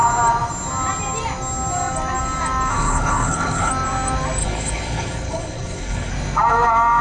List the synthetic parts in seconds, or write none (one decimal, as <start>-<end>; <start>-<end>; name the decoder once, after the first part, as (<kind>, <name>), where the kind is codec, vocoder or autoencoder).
2.7-3.7 (codec, HILCodec); 4.4-6.1